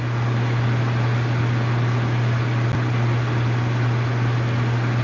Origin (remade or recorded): recorded